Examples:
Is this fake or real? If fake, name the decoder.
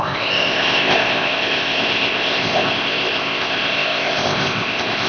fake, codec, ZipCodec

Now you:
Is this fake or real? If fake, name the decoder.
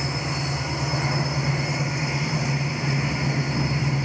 real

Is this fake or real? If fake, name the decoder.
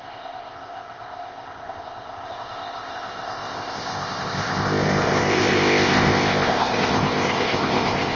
fake, codec, ZipCodec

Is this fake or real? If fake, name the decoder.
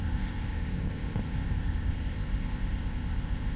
fake, codec, ZipCodec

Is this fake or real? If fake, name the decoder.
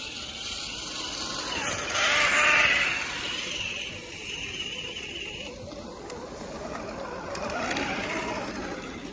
real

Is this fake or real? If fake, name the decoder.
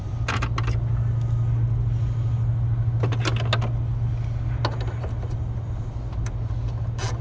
real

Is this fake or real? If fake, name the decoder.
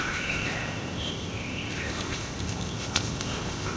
fake, codec, ZipCodec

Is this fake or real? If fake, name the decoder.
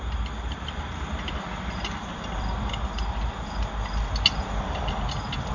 real